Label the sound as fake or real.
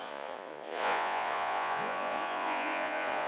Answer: fake